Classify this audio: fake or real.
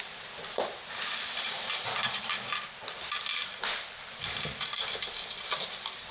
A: real